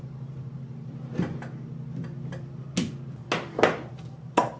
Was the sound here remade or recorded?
recorded